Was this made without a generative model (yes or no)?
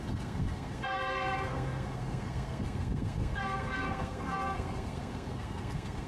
no